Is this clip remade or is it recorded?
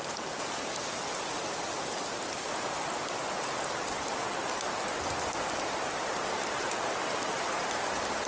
recorded